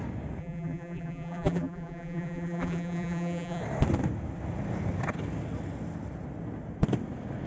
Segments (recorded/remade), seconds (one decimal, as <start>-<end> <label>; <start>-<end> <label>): 0.0-0.4 recorded; 0.4-3.6 remade; 3.6-7.5 recorded